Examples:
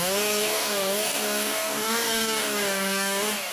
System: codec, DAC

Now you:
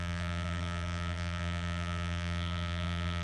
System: vocoder, BigVGAN v2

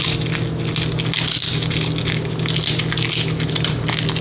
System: none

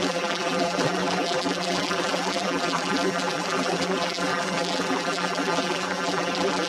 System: vocoder, BigVGAN v2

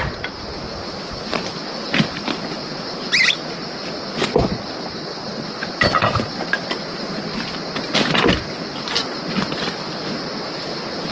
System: none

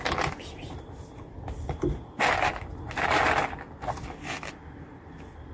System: none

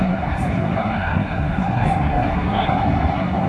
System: codec, SNAC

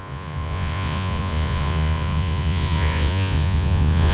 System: vocoder, Vocos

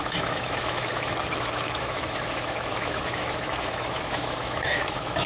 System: autoencoder, DAC-VAE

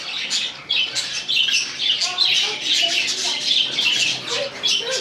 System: none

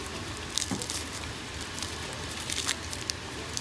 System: vocoder, BigVGAN v2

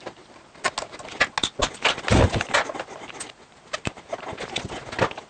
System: none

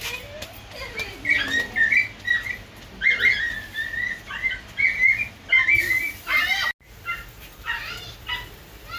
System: none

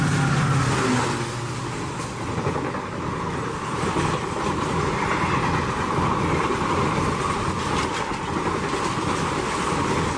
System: none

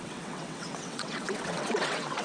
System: vocoder, WaveNeXt